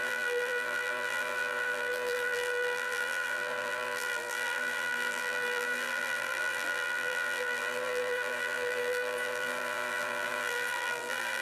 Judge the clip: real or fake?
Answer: fake